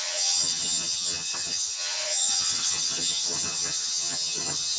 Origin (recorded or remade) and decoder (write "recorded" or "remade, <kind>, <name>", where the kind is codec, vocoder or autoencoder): remade, vocoder, HiFi-GAN